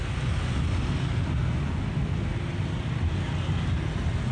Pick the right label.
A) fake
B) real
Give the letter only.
B